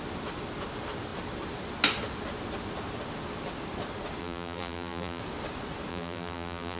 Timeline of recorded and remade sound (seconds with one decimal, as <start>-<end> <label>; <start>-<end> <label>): 0.0-4.2 recorded; 4.2-5.2 remade; 5.2-5.9 recorded; 5.9-6.8 remade